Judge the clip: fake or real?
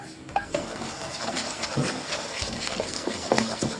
fake